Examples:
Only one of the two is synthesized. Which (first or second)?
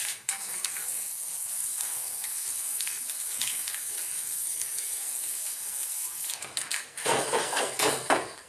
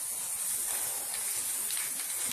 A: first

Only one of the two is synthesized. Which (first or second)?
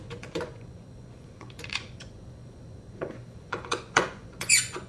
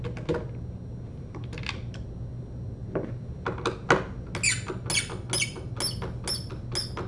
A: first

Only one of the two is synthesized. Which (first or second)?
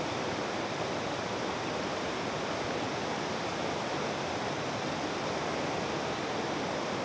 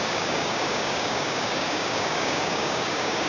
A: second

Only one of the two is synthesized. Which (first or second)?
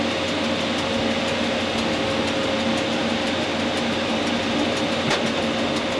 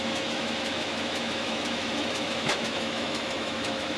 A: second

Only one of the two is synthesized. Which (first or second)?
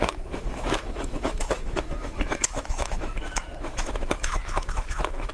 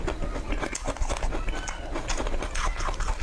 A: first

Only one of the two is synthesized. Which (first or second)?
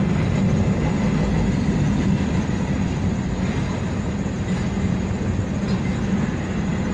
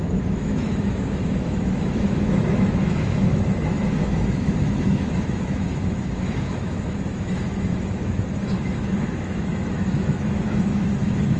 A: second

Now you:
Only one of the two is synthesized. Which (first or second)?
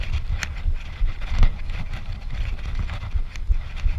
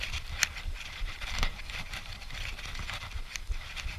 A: second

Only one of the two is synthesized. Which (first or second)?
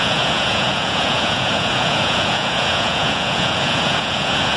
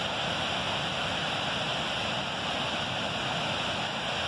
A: first